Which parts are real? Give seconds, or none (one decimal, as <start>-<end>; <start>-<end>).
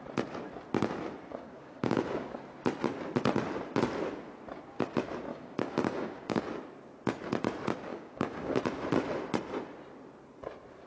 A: 0.0-1.3; 2.4-5.3; 6.4-7.9; 8.6-10.9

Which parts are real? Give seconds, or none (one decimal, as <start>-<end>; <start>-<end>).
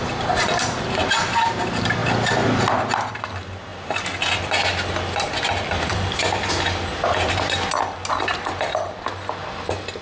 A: 0.0-10.0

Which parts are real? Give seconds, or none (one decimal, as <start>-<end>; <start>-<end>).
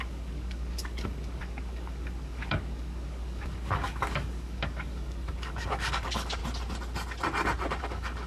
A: 6.4-7.8